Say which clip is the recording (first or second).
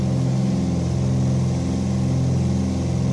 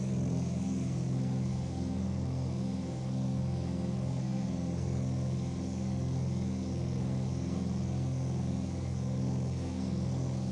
first